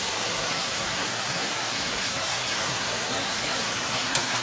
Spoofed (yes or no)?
yes